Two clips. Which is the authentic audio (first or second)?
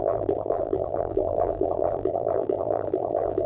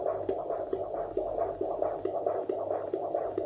second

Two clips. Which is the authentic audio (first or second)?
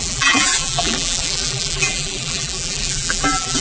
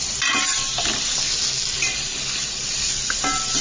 second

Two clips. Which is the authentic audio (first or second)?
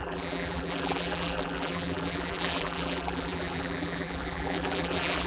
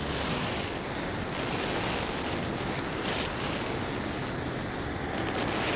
second